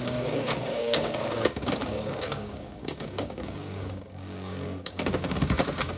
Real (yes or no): no